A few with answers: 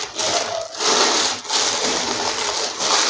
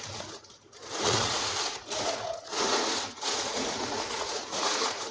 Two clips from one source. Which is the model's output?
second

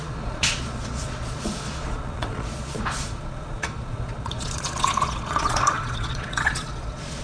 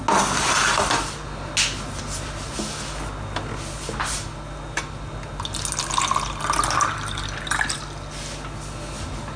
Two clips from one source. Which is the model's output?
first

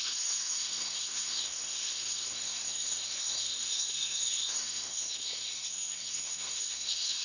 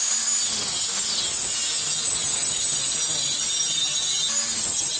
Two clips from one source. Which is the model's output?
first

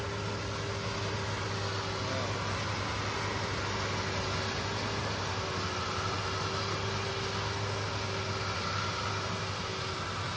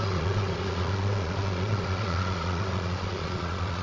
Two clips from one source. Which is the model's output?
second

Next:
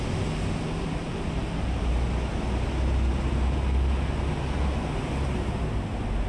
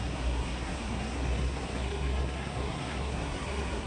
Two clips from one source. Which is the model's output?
second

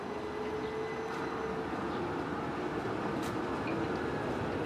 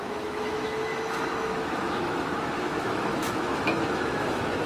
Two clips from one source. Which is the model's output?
second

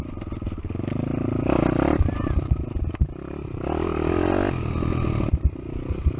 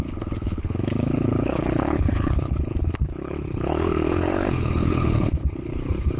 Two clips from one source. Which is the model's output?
second